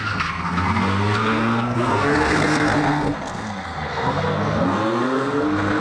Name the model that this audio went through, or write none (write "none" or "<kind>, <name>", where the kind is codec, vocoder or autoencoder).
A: codec, SNAC